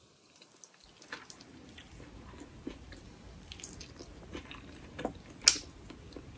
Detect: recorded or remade recorded